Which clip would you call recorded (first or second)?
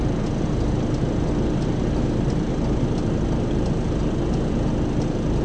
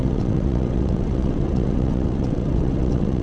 first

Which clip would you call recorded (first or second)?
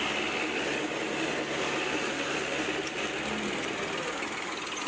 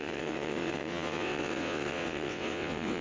first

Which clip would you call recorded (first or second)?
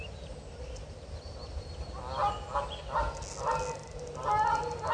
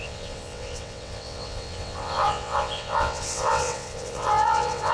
first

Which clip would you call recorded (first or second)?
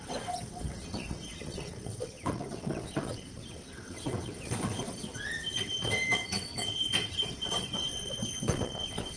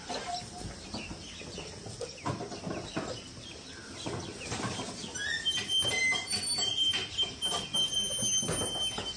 second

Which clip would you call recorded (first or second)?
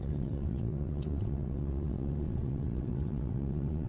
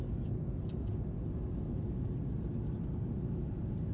second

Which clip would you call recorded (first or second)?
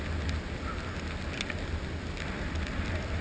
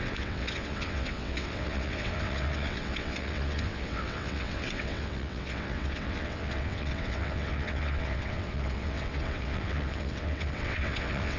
first